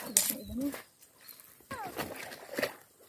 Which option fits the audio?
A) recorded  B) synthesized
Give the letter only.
A